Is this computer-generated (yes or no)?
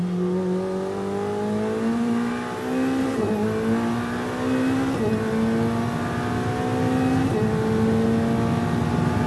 no